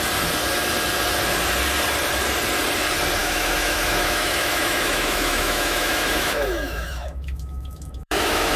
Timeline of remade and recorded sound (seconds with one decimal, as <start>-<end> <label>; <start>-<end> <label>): 0.0-3.2 recorded; 3.2-8.6 remade